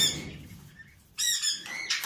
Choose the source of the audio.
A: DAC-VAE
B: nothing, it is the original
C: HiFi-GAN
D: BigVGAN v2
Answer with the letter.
B